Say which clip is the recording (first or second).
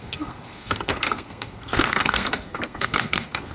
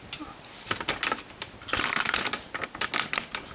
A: second